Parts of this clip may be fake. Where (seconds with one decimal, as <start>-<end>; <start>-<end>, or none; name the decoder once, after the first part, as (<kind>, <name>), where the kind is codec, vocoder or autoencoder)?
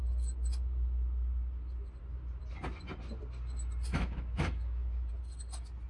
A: 3.9-5.1 (autoencoder, DAC-VAE)